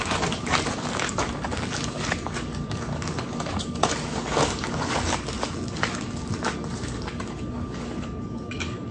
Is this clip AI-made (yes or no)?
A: yes